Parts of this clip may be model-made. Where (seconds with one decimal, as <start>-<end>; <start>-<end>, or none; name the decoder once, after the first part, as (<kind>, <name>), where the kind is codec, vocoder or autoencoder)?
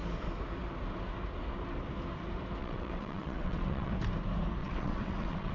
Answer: 2.6-3.9 (vocoder, WaveNeXt); 4.6-5.5